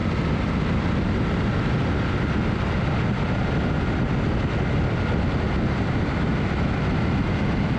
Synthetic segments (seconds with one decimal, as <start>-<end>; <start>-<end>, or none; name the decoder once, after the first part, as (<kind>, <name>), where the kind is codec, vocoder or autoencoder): none